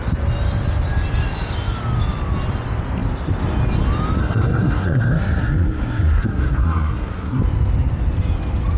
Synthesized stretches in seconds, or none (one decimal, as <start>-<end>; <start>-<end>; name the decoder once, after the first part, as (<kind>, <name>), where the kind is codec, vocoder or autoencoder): 4.2-7.4 (codec, SNAC)